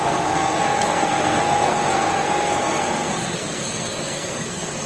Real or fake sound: fake